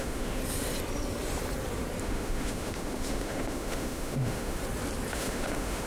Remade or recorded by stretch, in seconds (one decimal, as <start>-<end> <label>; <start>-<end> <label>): 0.0-0.4 remade; 0.4-2.0 recorded; 2.0-4.6 remade; 4.6-5.1 recorded; 5.1-5.9 remade